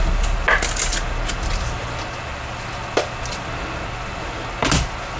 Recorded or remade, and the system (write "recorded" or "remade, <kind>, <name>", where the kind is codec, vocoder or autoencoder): recorded